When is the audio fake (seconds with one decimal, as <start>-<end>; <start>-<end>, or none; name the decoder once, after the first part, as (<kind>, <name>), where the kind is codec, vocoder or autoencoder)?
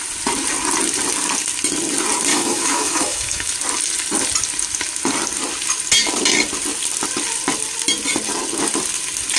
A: 2.3-3.5 (autoencoder, DAC-VAE)